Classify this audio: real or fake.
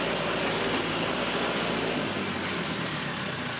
fake